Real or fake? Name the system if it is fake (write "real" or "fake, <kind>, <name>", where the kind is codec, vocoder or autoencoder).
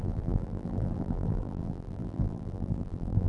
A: fake, vocoder, BigVGAN v2